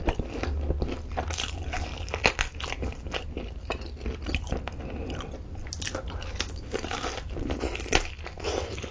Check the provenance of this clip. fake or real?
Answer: real